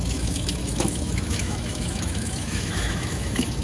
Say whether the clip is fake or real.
fake